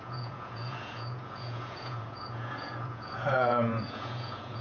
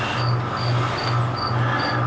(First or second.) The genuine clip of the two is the second